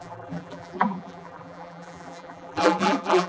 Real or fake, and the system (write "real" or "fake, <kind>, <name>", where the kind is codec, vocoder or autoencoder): fake, vocoder, BigVGAN v2